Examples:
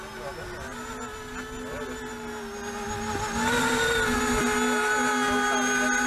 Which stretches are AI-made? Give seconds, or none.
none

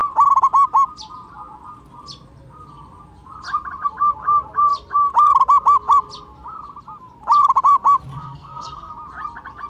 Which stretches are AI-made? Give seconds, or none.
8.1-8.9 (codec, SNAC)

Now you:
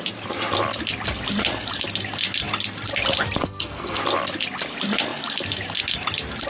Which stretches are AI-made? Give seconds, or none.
3.4-4.0 (codec, SNAC)